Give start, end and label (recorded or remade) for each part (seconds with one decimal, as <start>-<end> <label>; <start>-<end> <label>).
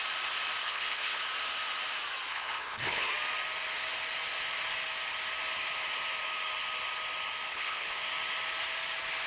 0.0-0.6 recorded; 0.6-1.2 remade; 1.2-2.3 recorded; 2.3-3.1 remade; 3.1-7.5 recorded; 7.5-8.0 remade; 8.0-9.3 recorded